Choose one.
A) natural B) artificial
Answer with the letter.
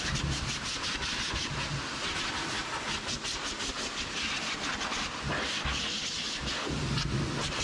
A